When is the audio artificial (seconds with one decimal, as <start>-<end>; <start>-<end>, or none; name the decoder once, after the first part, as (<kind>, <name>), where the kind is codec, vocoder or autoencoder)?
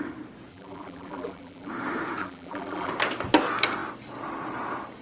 0.5-1.7 (vocoder, BigVGAN v2); 2.2-2.9